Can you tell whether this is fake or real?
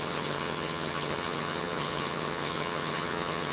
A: fake